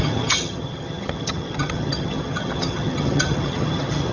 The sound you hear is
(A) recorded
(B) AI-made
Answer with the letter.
B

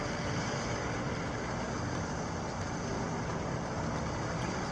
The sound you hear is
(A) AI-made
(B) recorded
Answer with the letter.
B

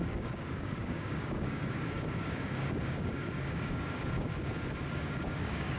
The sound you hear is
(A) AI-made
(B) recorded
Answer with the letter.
A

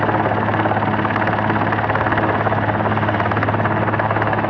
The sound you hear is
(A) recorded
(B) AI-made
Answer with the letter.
A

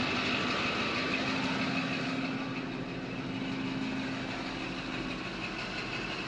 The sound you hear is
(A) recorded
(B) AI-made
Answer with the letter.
A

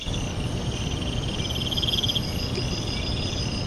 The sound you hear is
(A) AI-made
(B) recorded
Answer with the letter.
B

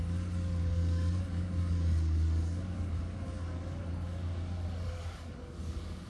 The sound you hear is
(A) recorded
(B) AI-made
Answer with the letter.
B